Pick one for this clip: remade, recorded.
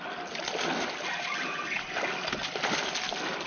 recorded